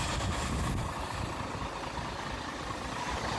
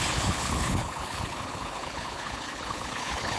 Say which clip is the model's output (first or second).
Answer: second